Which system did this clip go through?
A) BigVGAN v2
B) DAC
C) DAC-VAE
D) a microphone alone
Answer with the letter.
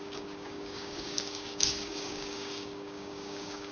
B